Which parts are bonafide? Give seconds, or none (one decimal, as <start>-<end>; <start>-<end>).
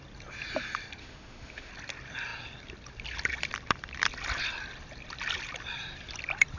0.0-1.0; 1.7-6.6